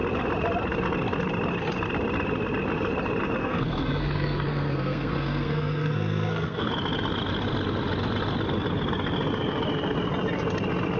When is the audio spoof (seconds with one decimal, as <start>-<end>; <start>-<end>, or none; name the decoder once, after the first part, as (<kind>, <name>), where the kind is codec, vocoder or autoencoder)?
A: 3.4-6.7 (codec, SNAC)